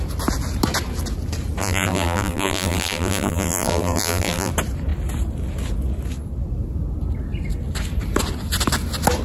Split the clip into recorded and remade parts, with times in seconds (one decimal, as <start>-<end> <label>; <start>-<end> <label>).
0.0-1.6 recorded; 1.6-4.5 remade; 4.5-9.2 recorded